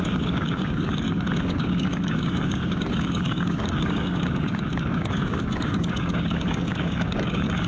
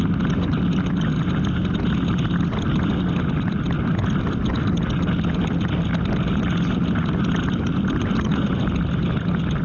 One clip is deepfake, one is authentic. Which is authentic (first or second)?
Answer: second